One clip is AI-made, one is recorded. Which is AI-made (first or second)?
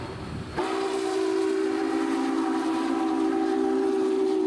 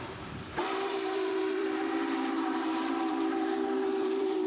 second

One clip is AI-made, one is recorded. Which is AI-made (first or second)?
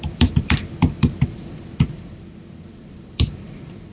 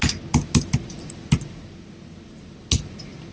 first